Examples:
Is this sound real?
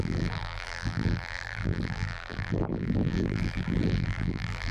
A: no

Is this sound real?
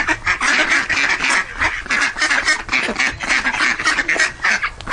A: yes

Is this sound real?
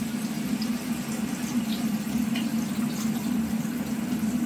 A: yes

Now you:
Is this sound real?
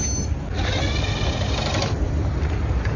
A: yes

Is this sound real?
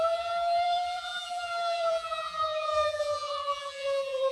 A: no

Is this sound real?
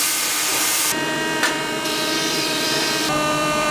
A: no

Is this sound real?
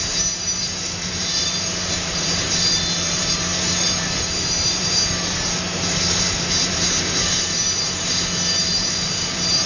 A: no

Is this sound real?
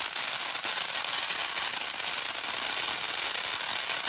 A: yes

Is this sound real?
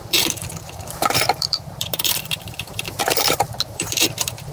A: no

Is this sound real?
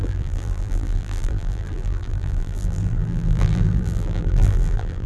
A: no